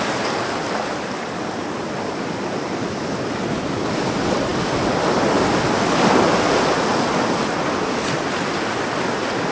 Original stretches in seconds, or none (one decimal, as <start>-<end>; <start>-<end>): 0.0-9.5